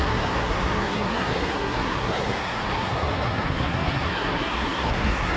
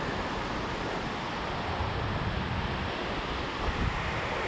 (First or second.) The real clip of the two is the second